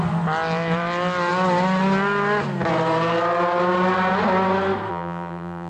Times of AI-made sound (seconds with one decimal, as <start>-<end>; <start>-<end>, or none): 4.9-5.7